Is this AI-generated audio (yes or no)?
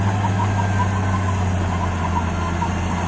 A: no